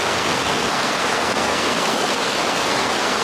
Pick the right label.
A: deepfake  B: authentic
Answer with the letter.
A